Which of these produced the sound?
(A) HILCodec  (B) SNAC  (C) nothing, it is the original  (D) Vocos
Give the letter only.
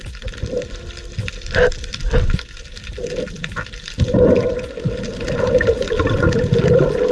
C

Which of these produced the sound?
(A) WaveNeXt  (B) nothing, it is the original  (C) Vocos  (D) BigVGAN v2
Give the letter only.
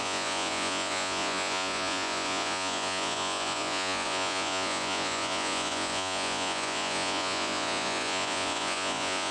C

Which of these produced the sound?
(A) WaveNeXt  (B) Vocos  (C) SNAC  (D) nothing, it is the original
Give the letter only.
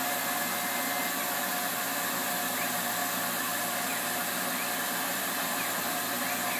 D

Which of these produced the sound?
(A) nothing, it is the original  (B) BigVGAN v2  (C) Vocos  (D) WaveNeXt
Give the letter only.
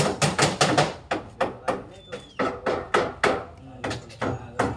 A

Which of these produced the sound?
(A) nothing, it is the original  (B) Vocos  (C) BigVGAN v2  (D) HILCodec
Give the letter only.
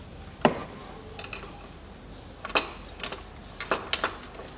A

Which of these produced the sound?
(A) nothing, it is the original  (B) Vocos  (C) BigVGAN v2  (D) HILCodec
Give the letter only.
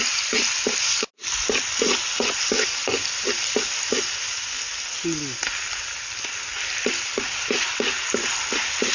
A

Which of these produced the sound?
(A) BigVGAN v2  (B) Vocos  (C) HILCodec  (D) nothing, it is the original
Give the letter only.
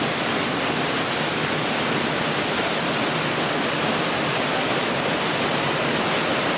D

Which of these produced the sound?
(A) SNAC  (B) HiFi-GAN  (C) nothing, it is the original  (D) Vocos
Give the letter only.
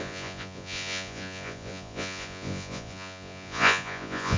D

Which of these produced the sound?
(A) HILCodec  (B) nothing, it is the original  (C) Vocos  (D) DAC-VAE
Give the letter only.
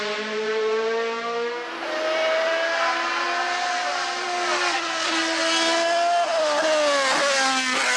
B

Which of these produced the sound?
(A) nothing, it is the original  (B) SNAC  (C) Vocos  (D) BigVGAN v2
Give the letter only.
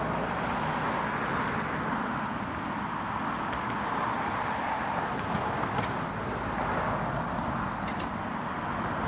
A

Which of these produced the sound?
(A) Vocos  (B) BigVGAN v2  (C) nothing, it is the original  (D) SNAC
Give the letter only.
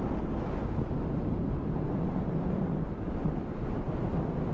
C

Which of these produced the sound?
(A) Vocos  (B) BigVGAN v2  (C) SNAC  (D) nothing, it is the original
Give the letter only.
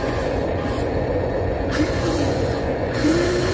A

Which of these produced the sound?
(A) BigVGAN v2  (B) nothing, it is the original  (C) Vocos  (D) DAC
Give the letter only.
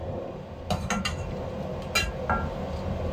B